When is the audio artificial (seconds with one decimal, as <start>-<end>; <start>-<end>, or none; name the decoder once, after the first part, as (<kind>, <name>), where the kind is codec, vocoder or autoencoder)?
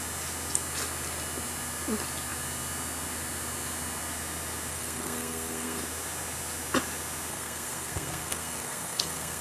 4.7-5.8 (codec, SNAC); 7.3-9.4